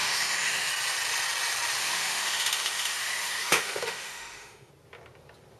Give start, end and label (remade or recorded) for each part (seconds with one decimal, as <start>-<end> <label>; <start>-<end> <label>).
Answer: 0.0-0.7 remade; 0.7-1.8 recorded; 1.8-4.7 remade; 4.7-5.6 recorded